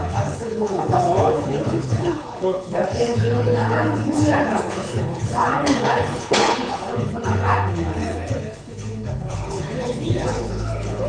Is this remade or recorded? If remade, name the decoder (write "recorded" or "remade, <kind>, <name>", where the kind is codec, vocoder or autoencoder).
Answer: remade, codec, HILCodec